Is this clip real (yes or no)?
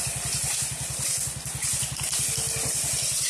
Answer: yes